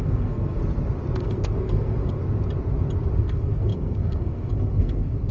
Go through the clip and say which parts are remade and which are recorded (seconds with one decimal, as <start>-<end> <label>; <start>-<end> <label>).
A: 0.0-0.6 remade; 0.6-1.2 recorded; 1.2-2.2 remade; 2.2-3.2 recorded; 3.2-5.3 remade